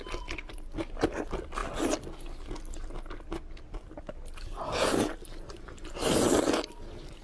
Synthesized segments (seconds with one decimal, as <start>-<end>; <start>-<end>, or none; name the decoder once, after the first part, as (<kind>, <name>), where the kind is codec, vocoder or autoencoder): none